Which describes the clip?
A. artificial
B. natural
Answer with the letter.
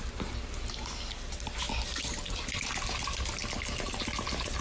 B